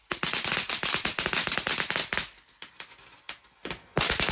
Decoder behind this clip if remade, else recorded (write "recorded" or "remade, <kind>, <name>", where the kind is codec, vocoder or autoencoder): recorded